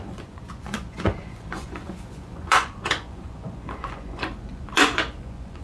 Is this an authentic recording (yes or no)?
no